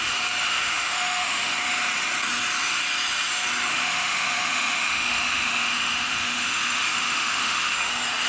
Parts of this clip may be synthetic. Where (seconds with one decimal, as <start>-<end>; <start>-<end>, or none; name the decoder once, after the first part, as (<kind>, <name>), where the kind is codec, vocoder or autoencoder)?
0.4-1.5 (autoencoder, DAC-VAE); 3.7-7.9